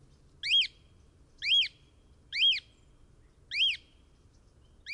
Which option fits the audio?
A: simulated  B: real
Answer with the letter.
B